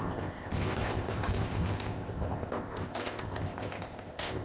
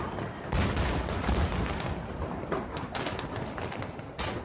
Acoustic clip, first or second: second